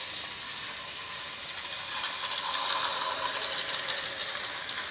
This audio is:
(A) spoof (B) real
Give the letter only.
B